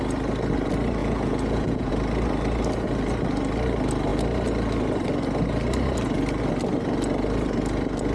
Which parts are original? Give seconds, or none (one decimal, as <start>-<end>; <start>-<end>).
0.0-1.0; 1.9-8.1